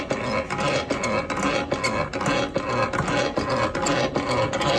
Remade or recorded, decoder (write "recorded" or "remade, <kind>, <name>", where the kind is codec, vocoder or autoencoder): recorded